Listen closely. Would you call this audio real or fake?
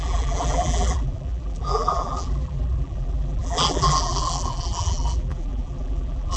fake